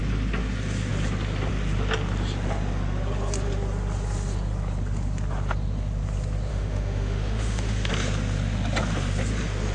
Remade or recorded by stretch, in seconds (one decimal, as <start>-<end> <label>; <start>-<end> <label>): 0.0-6.5 recorded; 6.5-7.9 remade; 7.9-9.7 recorded